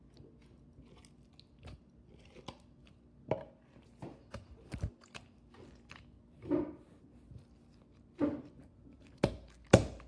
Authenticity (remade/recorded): recorded